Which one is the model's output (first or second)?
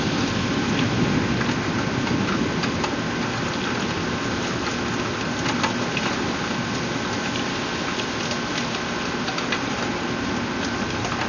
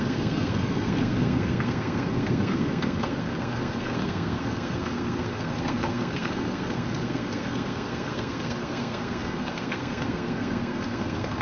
second